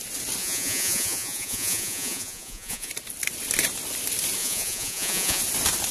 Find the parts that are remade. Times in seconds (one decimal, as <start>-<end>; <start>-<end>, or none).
0.4-2.9; 4.4-5.4